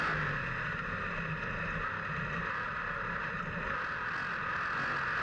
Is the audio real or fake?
real